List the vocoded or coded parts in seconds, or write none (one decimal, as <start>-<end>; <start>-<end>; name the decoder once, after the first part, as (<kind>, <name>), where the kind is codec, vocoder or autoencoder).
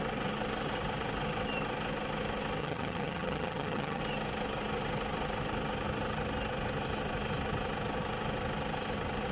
2.6-4.0 (vocoder, HiFi-GAN)